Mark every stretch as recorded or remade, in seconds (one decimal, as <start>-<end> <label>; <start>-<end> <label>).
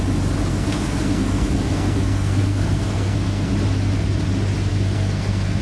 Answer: 0.0-0.5 recorded; 0.5-3.5 remade; 3.5-4.7 recorded; 4.7-5.6 remade